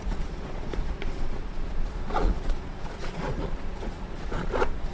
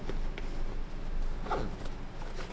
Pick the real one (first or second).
second